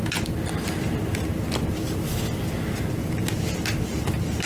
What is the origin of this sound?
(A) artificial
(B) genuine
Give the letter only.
B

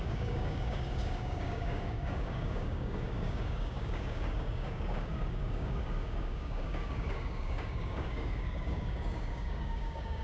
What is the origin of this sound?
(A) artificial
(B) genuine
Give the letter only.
A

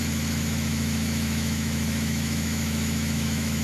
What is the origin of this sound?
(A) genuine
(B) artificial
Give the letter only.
B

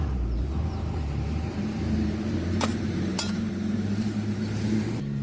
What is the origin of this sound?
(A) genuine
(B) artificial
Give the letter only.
B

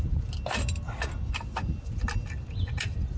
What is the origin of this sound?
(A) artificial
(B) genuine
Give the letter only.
B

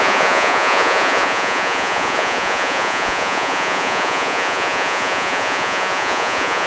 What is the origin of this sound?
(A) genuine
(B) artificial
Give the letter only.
B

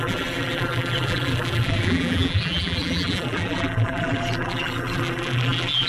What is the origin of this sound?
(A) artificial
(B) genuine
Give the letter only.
A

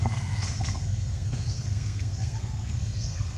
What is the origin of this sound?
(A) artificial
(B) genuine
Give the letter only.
A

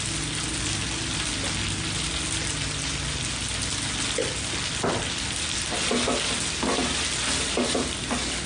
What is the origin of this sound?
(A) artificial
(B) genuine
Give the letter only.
B